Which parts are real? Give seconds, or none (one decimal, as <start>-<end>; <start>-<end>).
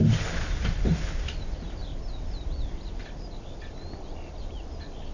0.0-5.1